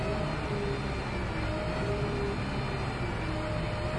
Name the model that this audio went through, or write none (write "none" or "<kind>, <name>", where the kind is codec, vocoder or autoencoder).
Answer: none